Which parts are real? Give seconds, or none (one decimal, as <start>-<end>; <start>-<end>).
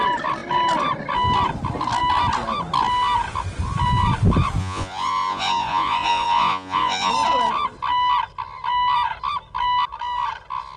0.0-4.6; 7.1-10.8